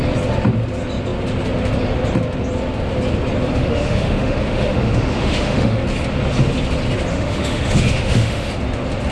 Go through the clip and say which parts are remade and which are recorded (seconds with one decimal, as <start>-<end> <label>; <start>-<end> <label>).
0.0-3.6 recorded; 3.6-5.8 remade; 5.8-7.1 recorded; 7.1-8.5 remade; 8.5-9.1 recorded

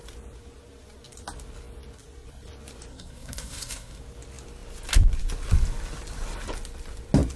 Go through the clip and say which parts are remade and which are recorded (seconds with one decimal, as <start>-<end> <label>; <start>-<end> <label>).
0.0-2.9 recorded; 2.9-4.0 remade; 4.0-7.4 recorded

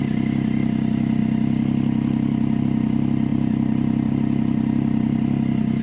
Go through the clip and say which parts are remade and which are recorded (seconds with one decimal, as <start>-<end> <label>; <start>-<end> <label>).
0.0-5.8 recorded

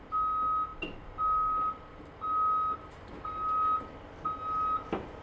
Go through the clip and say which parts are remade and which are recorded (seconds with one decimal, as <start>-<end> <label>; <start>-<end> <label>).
0.0-5.2 recorded

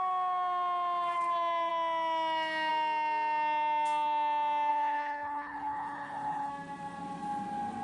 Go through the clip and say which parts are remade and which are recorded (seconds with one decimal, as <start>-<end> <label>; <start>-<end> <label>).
0.0-4.7 recorded; 4.7-6.5 remade; 6.5-7.8 recorded

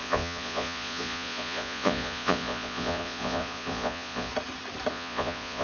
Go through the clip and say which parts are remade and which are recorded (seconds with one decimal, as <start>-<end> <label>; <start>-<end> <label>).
0.0-4.3 remade; 4.3-4.9 recorded; 4.9-5.6 remade

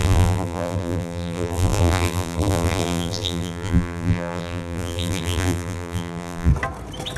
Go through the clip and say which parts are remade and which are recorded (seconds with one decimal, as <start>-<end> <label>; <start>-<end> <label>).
0.0-6.5 remade; 6.5-7.2 recorded

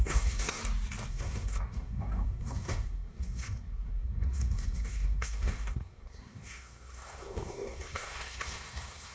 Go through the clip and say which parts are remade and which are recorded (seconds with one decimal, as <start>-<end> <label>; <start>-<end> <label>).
0.0-0.6 remade; 0.6-1.1 recorded; 1.1-9.1 remade